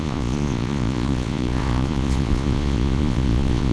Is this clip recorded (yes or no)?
no